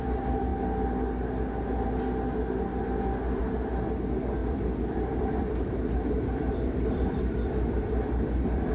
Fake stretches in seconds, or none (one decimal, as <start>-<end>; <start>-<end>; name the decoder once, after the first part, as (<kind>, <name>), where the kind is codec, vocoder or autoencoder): 4.4-8.7 (vocoder, BigVGAN v2)